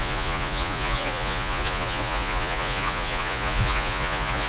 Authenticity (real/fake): fake